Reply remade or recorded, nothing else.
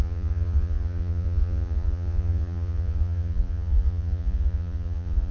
remade